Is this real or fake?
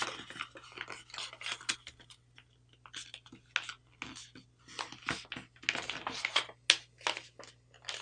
real